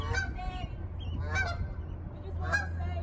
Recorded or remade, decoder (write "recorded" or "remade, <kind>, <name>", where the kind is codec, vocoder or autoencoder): recorded